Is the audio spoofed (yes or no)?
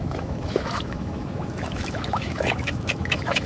yes